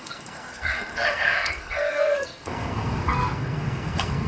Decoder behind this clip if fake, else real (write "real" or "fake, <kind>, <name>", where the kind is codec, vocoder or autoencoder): fake, codec, SNAC